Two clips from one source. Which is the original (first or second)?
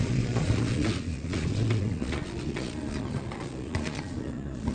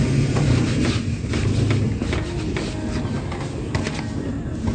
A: second